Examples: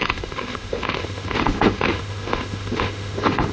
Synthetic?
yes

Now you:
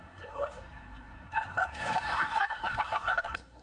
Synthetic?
yes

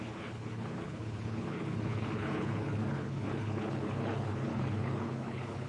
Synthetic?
yes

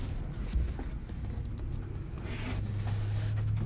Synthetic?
no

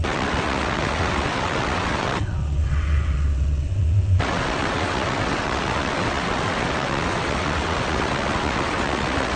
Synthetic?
yes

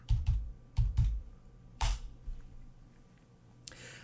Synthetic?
yes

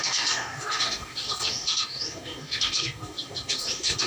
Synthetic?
yes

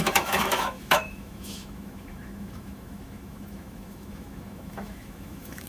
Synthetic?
yes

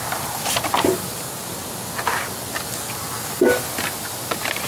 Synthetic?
no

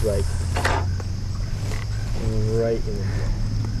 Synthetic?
no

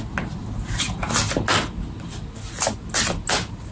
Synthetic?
no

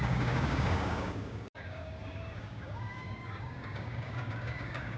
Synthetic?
yes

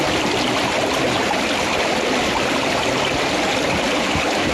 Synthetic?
no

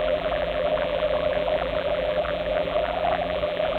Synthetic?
yes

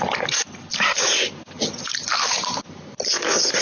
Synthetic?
no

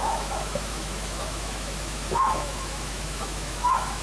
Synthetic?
yes